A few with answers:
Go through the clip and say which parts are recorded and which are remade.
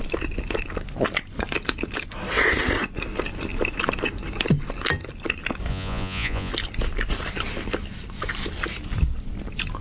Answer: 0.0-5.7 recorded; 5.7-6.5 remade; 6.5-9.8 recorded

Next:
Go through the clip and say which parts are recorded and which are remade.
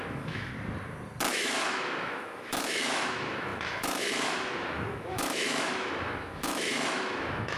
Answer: 0.0-0.5 remade; 0.5-1.3 recorded; 1.3-7.6 remade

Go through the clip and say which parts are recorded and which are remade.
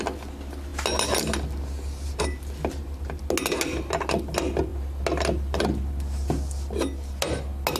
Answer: 0.0-7.8 recorded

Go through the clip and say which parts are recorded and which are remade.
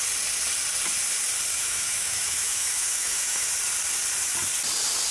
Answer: 0.0-1.5 recorded; 1.5-3.5 remade; 3.5-5.1 recorded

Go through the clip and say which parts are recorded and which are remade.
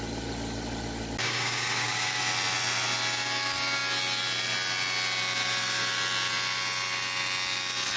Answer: 0.0-1.2 recorded; 1.2-2.2 remade; 2.2-8.0 recorded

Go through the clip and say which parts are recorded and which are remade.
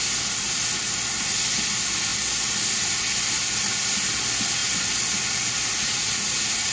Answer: 0.0-5.7 recorded; 5.7-6.7 remade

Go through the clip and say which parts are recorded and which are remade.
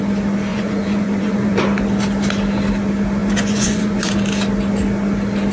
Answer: 0.0-0.5 recorded; 0.5-1.6 remade; 1.6-3.2 recorded; 3.2-4.1 remade; 4.1-5.5 recorded